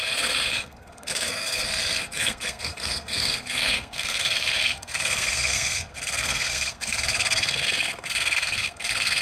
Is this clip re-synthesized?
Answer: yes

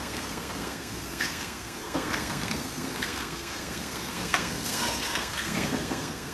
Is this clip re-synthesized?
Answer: yes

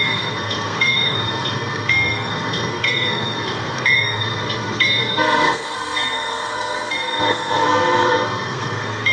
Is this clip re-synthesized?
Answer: yes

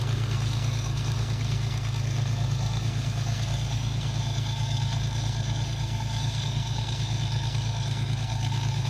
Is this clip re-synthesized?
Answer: yes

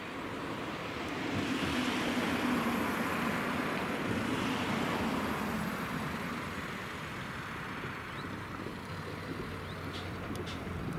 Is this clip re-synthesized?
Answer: no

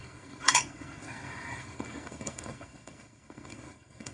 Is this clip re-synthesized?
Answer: yes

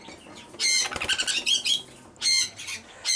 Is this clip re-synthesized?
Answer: no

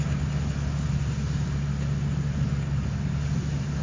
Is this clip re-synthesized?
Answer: no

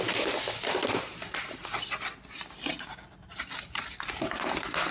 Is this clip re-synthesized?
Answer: no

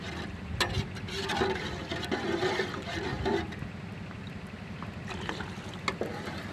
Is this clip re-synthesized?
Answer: no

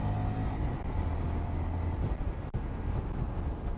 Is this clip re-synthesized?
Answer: no